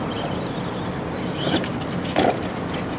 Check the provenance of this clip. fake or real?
real